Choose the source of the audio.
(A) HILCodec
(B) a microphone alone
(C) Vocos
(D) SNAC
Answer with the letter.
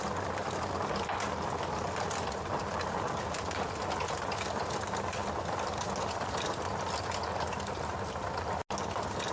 B